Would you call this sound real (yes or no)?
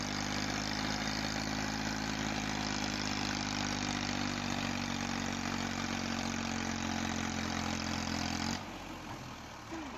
yes